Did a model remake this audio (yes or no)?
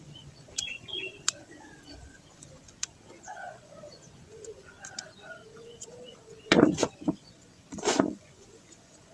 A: yes